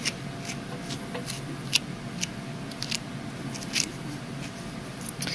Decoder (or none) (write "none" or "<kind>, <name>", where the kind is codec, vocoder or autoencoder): none